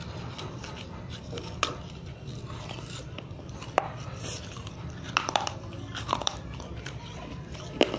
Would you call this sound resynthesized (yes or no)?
yes